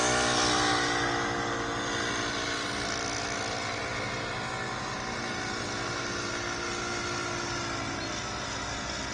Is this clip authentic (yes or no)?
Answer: yes